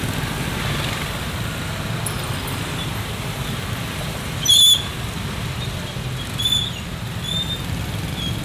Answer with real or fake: real